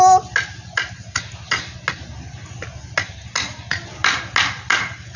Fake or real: real